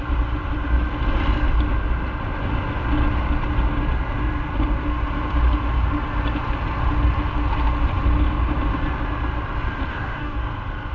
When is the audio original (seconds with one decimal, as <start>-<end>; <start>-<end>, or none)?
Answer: 0.0-9.9; 10.4-10.9